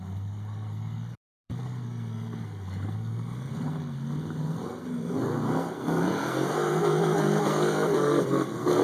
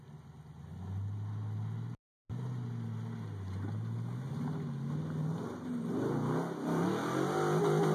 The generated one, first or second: first